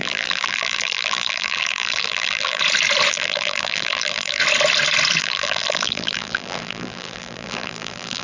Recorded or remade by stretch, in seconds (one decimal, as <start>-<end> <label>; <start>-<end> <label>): 0.0-2.6 remade; 2.6-3.1 recorded; 3.1-4.4 remade; 4.4-5.2 recorded; 5.2-8.2 remade